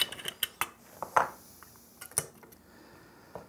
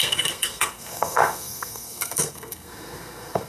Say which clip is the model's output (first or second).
second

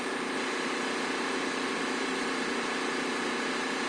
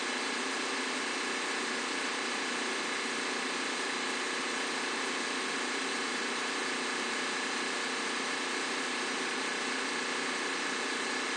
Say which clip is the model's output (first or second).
second